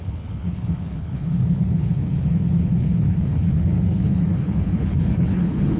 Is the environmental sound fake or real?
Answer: fake